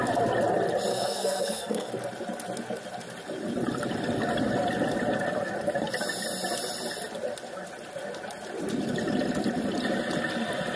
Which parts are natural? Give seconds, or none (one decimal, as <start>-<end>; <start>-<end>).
0.0-0.9; 1.9-10.8